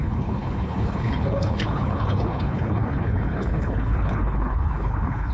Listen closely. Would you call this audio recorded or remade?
remade